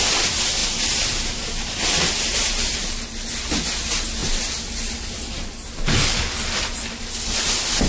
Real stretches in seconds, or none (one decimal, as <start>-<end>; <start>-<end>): 0.0-7.9

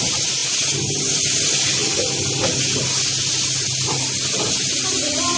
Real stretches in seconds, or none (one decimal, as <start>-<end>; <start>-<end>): 0.0-5.4